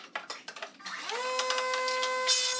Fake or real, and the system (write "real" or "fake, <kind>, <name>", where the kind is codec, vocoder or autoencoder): real